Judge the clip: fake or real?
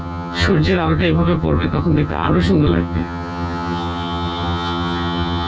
fake